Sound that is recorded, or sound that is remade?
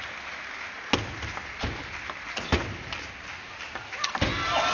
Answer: recorded